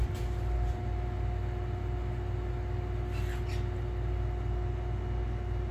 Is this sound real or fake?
real